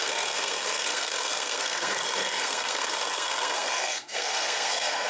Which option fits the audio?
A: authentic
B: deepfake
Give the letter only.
B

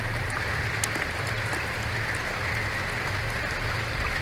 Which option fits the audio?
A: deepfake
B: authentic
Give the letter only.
B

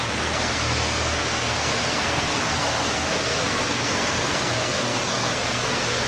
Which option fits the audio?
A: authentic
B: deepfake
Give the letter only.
B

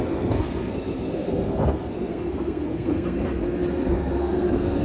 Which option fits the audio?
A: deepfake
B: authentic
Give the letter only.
A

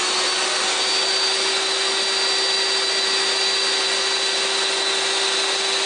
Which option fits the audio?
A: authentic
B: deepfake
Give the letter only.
A